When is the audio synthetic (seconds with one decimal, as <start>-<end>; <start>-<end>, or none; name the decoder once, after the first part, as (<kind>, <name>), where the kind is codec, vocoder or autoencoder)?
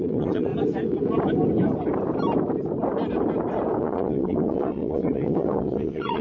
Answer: 0.0-0.5 (vocoder, Vocos); 3.8-6.2